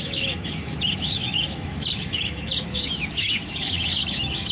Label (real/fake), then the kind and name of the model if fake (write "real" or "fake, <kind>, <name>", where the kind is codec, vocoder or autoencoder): fake, autoencoder, DAC-VAE